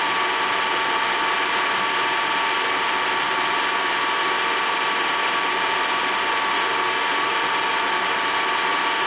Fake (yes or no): no